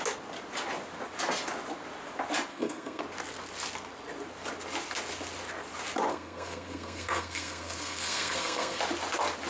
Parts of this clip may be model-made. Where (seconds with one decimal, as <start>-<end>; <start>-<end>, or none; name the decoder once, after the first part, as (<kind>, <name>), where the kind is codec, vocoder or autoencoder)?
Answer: 2.5-3.0 (codec, SNAC); 6.1-8.8